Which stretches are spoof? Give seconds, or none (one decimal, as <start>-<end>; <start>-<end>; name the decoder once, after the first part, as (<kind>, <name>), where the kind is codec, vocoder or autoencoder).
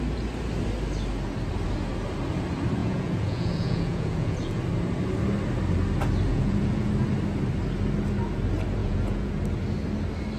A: 2.8-4.6 (vocoder, Vocos); 6.3-6.9; 8.8-9.3